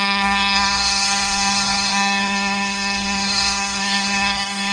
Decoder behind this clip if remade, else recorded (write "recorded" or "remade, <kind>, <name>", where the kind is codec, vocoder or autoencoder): remade, codec, SNAC